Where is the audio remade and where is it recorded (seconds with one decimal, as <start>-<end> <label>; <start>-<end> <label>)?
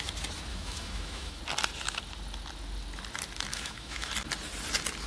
0.0-0.5 recorded; 0.5-1.4 remade; 1.4-3.5 recorded; 3.5-4.1 remade; 4.1-5.1 recorded